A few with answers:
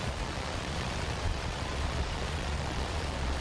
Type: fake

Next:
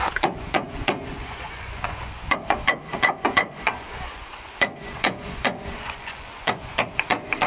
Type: fake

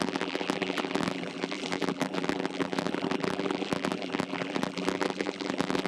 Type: fake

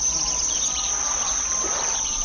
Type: real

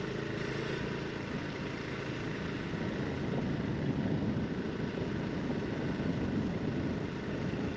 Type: real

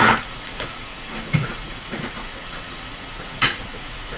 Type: fake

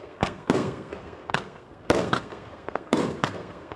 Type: fake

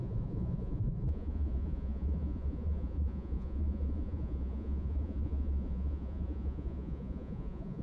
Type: fake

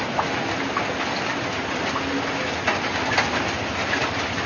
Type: real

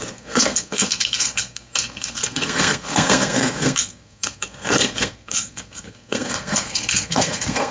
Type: fake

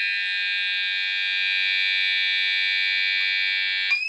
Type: real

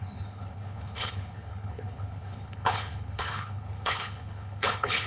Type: fake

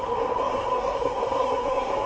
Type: fake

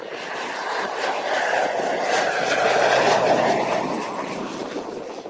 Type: real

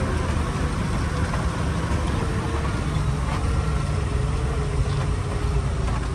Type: real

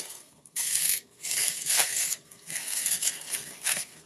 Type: fake